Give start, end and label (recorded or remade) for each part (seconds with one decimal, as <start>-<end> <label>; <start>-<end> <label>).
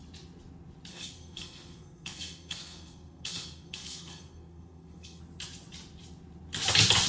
0.0-0.9 recorded; 0.9-5.2 remade; 5.2-7.1 recorded